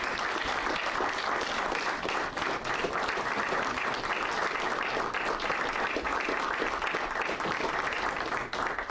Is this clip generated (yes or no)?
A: no